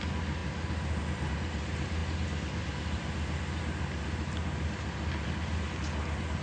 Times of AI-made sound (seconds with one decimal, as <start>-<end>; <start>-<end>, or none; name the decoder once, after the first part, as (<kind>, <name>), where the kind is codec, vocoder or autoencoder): none